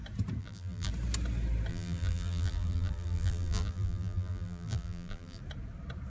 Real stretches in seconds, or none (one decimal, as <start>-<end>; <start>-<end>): 0.0-0.4; 0.9-1.7; 5.4-6.1